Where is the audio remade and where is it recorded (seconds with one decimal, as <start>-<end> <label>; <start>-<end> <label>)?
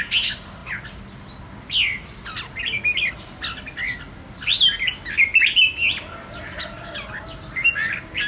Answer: 0.0-8.3 recorded